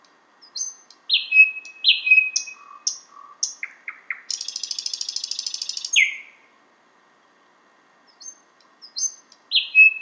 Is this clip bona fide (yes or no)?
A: yes